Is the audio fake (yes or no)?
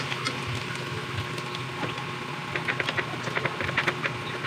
no